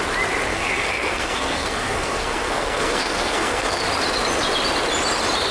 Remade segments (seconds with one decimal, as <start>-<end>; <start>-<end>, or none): 0.5-3.8